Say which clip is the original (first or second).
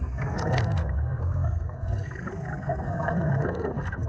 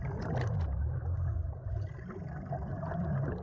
second